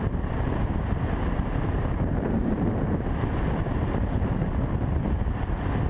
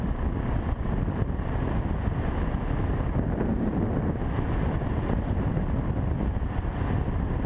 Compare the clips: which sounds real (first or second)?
second